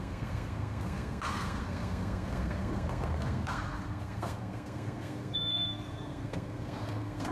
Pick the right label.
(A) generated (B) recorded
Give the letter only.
A